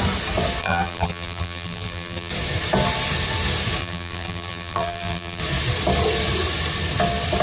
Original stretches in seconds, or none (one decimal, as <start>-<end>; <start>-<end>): 0.0-0.6; 2.3-3.8; 5.4-7.4